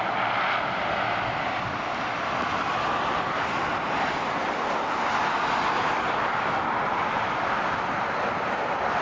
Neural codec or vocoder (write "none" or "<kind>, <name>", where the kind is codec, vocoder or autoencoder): none